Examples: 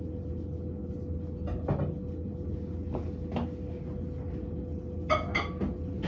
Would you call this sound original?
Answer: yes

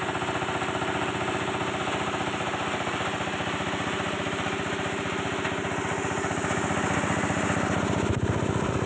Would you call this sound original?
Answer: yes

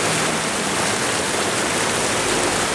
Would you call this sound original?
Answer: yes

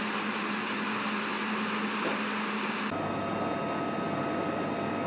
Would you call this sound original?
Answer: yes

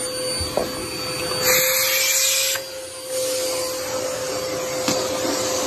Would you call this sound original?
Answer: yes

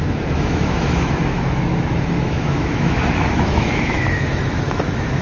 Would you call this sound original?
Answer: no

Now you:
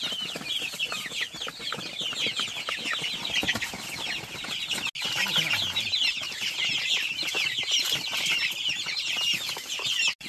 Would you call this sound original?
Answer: yes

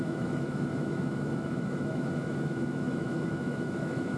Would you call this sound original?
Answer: no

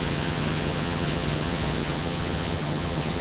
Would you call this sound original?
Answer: no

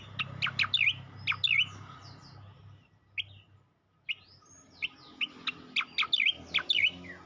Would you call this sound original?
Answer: yes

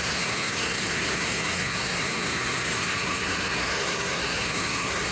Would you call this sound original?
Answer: no